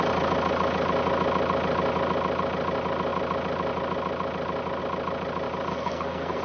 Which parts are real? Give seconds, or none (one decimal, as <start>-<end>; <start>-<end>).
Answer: 0.0-5.7